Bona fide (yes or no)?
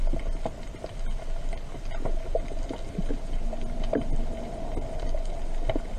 yes